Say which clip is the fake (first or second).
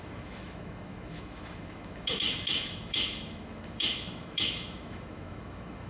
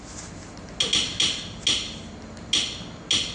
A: first